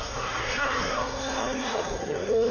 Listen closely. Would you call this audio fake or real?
fake